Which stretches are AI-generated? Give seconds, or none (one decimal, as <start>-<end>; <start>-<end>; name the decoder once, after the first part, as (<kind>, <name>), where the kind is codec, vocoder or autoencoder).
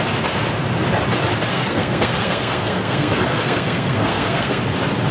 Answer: 1.5-4.6 (codec, SNAC)